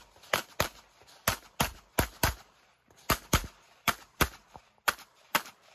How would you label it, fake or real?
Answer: real